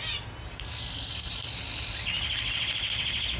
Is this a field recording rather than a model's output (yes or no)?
yes